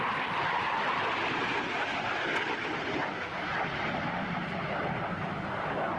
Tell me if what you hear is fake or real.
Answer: real